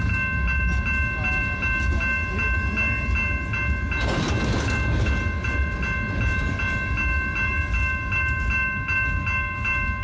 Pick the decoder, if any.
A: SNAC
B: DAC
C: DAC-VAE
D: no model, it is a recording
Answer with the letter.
D